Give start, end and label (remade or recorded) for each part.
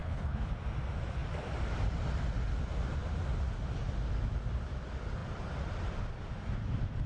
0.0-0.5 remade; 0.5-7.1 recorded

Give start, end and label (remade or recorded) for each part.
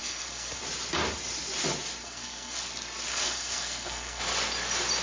0.0-0.6 remade; 0.6-2.0 recorded; 2.0-2.6 remade; 2.6-3.1 recorded; 3.1-4.2 remade; 4.2-5.0 recorded